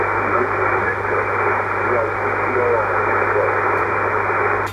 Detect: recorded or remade recorded